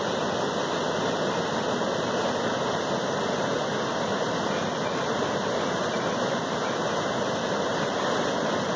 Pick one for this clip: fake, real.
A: real